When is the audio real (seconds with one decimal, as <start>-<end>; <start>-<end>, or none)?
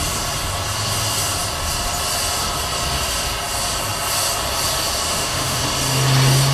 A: 0.0-5.1; 5.6-6.5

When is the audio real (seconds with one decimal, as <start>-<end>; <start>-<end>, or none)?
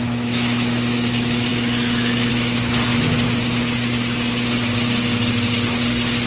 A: 2.9-6.3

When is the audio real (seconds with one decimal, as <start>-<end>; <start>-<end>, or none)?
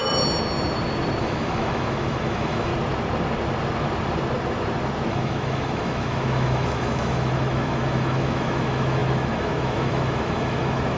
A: 0.0-1.2; 2.7-5.1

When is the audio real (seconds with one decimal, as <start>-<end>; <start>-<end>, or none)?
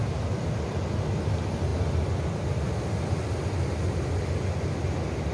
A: 0.0-5.3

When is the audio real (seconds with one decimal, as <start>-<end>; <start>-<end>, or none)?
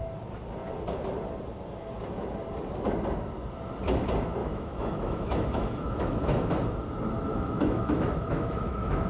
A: 0.0-4.4; 6.5-7.3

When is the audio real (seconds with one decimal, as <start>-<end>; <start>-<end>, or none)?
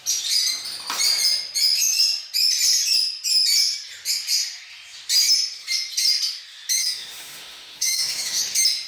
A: 0.0-6.8; 8.4-8.9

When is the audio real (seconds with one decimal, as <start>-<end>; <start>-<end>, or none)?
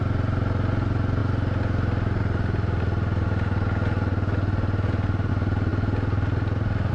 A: 0.0-6.9